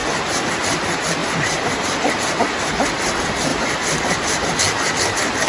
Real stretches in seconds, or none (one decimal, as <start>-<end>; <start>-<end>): 0.5-1.2; 2.1-3.5; 4.5-5.5